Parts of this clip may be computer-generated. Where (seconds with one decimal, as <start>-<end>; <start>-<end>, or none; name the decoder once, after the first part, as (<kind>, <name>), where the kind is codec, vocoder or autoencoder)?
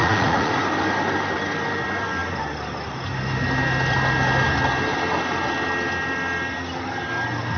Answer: 0.0-0.5 (vocoder, Vocos)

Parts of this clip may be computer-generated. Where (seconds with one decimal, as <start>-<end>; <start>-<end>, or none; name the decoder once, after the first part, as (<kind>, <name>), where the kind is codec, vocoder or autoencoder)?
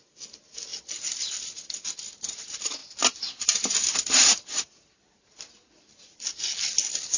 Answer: none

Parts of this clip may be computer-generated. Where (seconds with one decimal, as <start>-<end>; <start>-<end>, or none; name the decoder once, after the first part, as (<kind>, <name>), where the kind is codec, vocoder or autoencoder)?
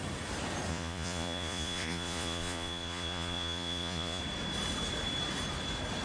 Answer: 0.7-4.2 (vocoder, Vocos)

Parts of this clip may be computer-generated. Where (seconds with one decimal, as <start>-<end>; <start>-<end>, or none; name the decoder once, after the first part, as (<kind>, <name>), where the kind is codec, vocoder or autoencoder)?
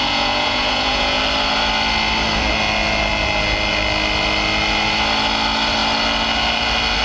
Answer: 0.0-1.2 (vocoder, Vocos)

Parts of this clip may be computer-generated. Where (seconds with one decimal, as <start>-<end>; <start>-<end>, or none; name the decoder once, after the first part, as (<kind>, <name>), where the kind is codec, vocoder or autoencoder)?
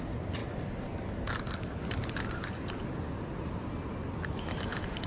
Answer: none